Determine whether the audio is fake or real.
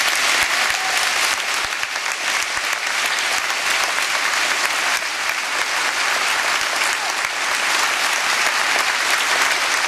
real